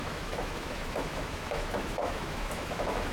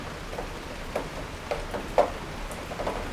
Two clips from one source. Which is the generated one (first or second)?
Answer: first